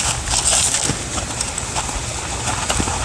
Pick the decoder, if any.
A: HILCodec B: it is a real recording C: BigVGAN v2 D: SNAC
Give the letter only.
B